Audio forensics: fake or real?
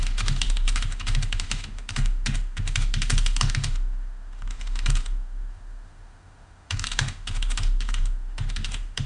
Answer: fake